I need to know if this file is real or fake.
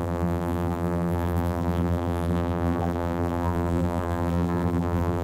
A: fake